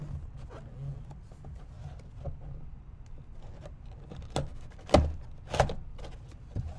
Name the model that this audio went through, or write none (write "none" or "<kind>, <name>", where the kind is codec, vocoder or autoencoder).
none